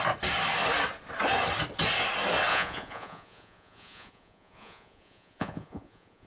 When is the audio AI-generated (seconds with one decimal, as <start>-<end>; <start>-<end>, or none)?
2.5-6.3